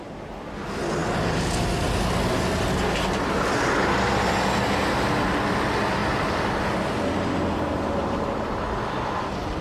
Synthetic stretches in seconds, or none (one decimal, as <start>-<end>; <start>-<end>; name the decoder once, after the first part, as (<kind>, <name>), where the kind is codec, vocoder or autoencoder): none